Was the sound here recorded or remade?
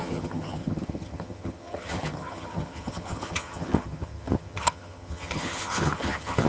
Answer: remade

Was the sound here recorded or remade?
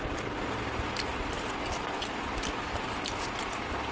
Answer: recorded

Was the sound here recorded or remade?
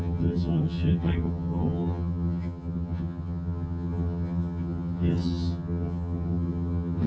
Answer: remade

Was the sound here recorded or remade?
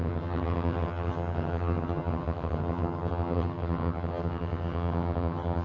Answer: remade